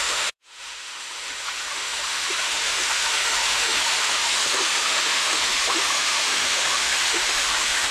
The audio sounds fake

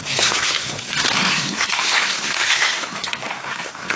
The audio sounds fake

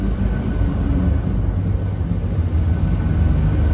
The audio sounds real